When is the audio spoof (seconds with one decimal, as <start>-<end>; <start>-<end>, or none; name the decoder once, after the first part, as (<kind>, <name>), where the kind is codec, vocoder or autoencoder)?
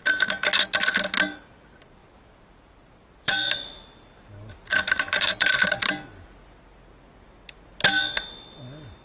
2.0-4.2 (vocoder, BigVGAN v2); 4.7-5.9